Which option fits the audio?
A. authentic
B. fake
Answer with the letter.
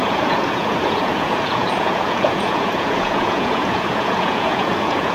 B